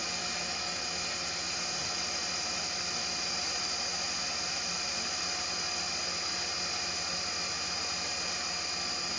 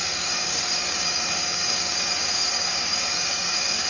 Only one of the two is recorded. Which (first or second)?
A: first